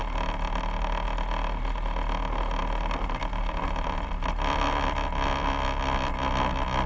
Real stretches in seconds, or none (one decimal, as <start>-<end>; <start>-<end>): 0.0-6.9